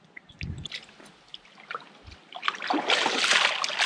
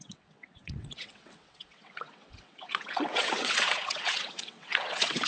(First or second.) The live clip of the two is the first